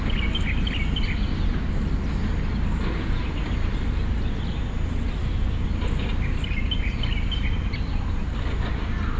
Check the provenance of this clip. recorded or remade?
recorded